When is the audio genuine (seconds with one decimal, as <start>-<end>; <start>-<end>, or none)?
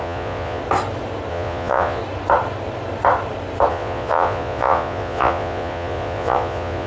0.6-1.3; 2.0-3.7